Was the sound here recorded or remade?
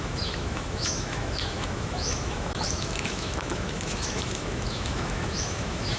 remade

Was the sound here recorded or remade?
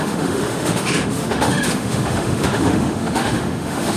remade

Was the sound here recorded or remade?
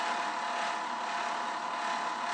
recorded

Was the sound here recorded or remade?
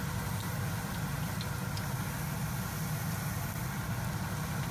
recorded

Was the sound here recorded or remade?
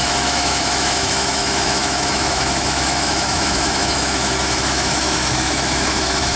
remade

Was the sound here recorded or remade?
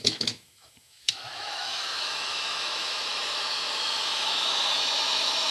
remade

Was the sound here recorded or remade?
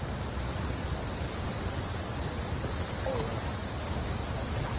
recorded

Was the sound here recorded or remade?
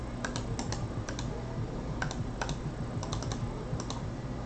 recorded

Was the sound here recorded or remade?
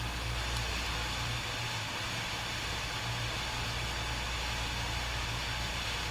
recorded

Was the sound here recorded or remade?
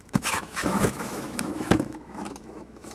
remade